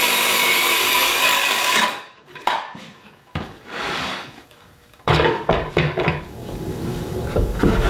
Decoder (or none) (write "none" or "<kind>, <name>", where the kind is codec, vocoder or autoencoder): codec, DAC